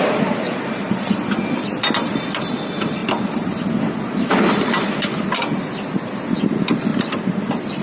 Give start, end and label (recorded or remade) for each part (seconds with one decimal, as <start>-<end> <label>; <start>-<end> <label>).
0.0-7.8 recorded